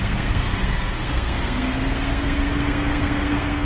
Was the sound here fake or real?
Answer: fake